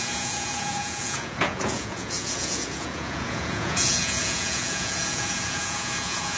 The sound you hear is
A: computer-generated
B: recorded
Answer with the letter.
A